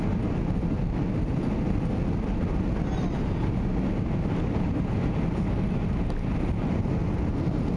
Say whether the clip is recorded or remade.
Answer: recorded